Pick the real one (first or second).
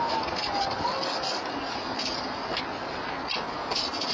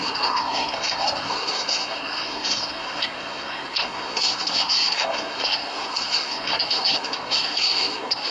first